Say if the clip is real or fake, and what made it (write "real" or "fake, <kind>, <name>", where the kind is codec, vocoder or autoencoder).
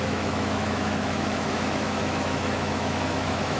fake, autoencoder, DAC-VAE